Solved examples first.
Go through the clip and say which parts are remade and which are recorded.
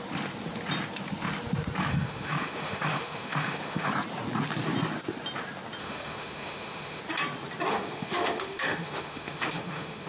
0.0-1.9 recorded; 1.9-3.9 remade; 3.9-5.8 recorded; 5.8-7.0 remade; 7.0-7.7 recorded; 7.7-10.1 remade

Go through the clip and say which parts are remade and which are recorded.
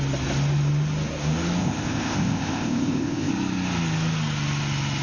0.0-1.6 recorded; 1.6-3.3 remade; 3.3-5.0 recorded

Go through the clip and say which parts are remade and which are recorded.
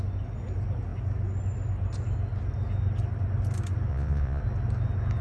0.0-3.9 recorded; 3.9-4.4 remade; 4.4-5.2 recorded